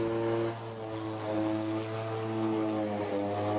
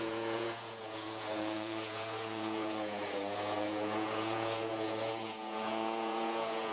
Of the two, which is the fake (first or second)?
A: second